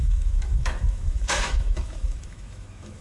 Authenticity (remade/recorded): remade